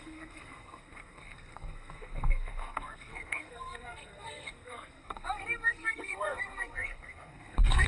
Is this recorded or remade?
remade